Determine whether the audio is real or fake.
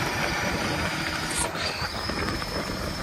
fake